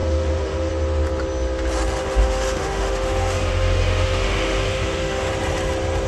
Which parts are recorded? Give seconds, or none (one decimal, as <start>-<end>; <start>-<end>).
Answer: 0.7-2.0; 5.3-6.1